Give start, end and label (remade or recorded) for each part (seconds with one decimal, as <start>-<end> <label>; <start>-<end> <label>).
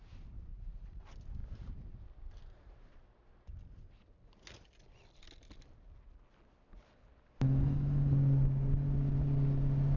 0.0-0.5 recorded; 0.5-1.0 remade; 1.0-10.0 recorded